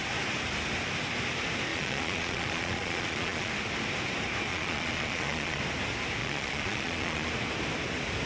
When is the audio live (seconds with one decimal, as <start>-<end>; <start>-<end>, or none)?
0.0-1.7; 3.5-4.5; 5.6-6.2; 7.3-8.3